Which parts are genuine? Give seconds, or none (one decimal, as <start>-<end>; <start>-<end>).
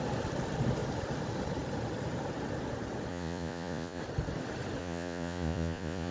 0.0-3.1; 4.0-4.8